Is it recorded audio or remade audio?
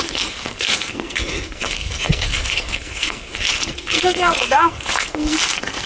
remade